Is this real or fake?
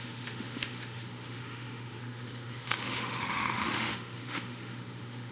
fake